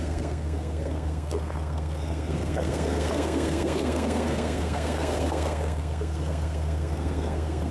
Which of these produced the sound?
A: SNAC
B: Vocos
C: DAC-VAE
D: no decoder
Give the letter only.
A